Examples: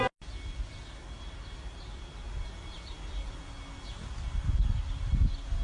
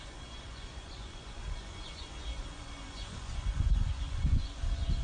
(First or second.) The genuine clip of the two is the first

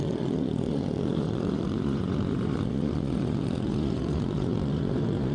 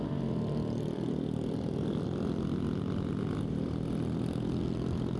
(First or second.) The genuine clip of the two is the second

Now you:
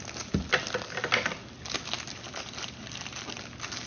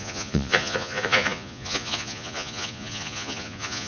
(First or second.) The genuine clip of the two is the first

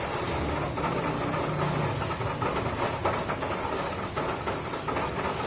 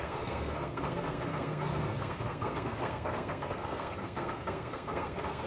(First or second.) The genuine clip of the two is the first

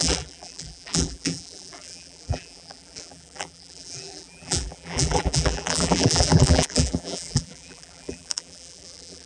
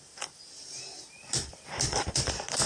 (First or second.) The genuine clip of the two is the second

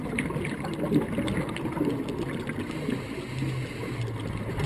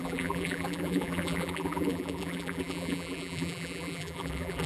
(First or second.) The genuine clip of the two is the first